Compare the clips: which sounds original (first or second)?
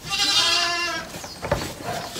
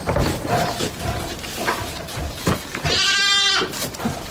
second